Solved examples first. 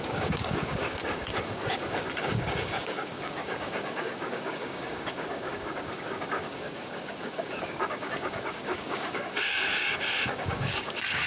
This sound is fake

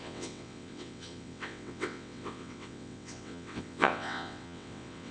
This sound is fake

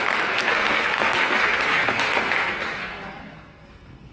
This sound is fake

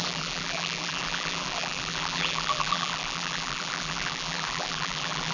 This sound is fake